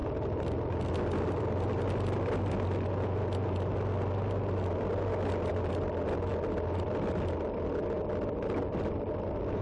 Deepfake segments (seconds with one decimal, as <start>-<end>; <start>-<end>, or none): none